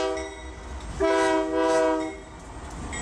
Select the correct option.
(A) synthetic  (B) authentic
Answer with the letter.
B